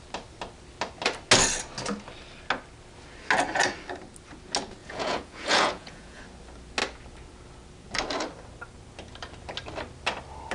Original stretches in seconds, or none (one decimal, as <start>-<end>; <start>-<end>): 0.0-4.8; 6.2-10.5

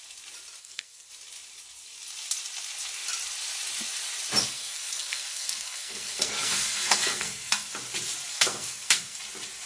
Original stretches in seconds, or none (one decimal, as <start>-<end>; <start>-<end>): 0.0-0.6; 1.1-4.4; 7.7-8.3; 9.2-9.7

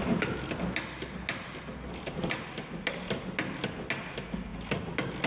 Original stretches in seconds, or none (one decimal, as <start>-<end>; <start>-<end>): 0.0-5.3

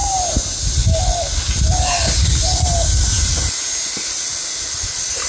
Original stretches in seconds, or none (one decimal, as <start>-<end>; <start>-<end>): 0.0-5.3

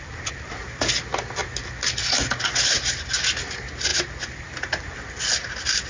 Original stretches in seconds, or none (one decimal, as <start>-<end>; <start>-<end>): 0.0-5.9